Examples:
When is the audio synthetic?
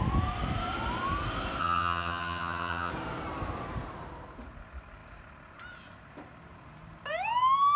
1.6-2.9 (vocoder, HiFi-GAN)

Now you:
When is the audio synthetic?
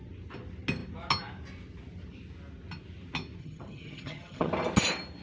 3.4-4.5 (vocoder, HiFi-GAN)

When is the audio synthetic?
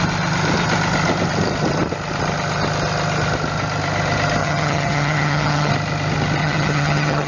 4.4-5.7 (vocoder, HiFi-GAN); 6.4-7.3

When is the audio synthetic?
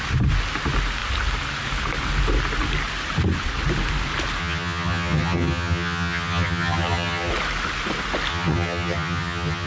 4.4-7.3 (vocoder, HiFi-GAN); 8.3-9.7